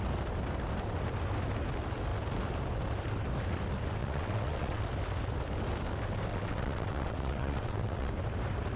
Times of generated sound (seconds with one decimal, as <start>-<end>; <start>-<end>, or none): 4.0-4.8; 6.3-8.1